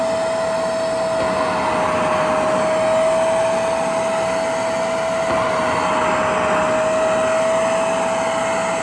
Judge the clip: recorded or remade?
recorded